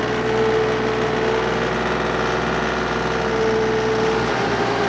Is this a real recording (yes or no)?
yes